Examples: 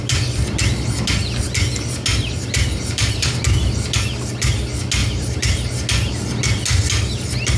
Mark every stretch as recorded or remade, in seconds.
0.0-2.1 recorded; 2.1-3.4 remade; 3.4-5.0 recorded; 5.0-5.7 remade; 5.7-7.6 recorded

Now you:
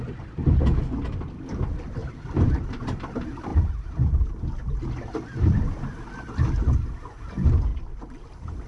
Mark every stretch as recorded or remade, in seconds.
0.0-2.0 recorded; 2.0-2.6 remade; 2.6-8.7 recorded

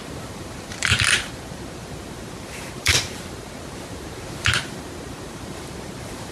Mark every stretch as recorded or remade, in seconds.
0.0-6.3 remade

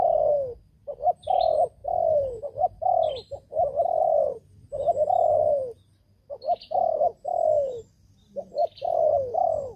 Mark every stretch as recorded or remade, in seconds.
0.0-1.8 recorded; 1.8-3.1 remade; 3.1-9.8 recorded

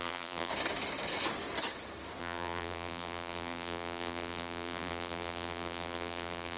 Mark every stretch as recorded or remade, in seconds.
0.0-0.5 remade; 0.5-2.2 recorded; 2.2-6.6 remade